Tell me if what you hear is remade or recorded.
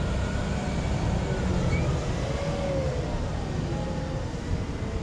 recorded